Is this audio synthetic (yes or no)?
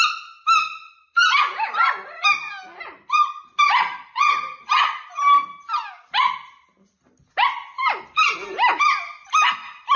no